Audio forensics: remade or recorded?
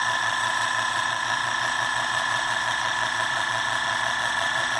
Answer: remade